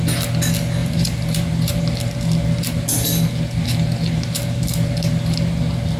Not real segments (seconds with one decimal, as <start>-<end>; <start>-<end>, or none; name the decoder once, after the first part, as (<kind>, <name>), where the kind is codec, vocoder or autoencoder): 0.8-1.8 (vocoder, BigVGAN v2)